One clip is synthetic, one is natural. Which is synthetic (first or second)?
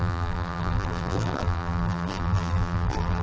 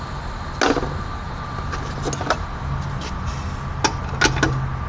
first